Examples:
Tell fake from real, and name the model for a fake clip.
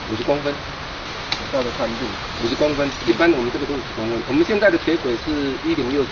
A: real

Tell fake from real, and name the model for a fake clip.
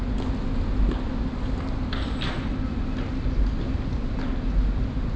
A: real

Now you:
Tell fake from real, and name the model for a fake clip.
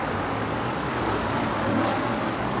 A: fake, codec, DAC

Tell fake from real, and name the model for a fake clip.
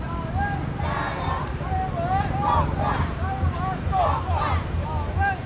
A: real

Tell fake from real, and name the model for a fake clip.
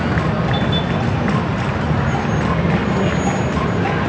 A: real